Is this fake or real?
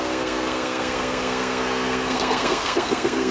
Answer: fake